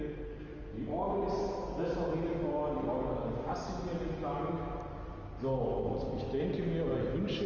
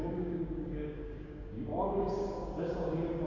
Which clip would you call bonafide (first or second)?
first